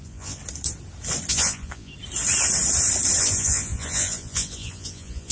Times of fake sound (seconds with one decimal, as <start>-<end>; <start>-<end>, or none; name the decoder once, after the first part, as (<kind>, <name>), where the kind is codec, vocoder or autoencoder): 0.0-0.4 (vocoder, Vocos); 1.3-1.9; 3.2-5.3